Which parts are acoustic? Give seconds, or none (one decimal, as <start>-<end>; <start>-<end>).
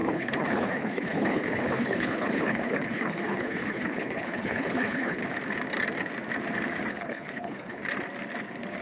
5.2-6.9; 7.8-8.8